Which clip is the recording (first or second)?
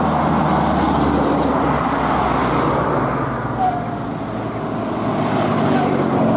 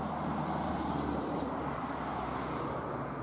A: first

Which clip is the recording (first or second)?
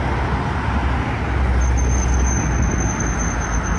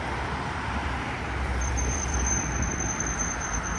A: first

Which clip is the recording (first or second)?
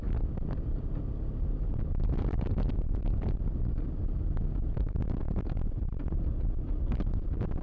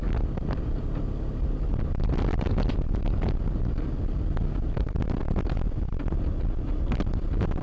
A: second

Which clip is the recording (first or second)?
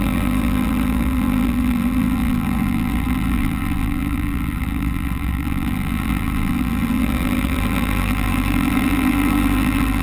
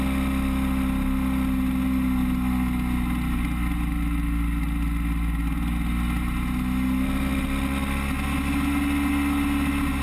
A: second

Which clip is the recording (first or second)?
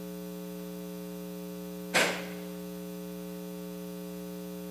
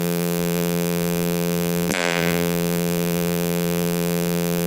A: first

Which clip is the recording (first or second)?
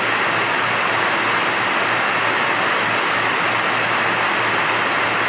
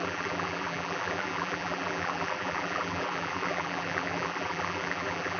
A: first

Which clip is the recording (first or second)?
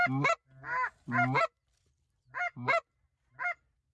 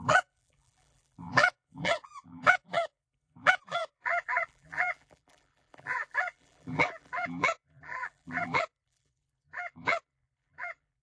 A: first